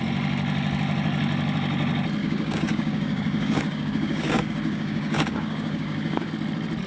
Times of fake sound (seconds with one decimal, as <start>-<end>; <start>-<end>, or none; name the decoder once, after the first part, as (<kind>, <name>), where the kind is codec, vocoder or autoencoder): 2.2-6.3 (codec, DAC)